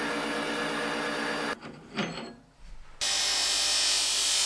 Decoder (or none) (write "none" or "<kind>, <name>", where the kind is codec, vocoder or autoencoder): none